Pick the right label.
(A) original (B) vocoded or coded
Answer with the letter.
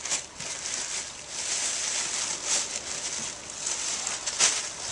A